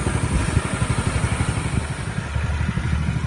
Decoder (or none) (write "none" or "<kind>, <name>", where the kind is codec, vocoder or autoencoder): none